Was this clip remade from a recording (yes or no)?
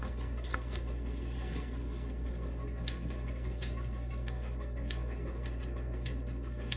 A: yes